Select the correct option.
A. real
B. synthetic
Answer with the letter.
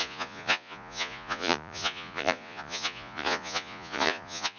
B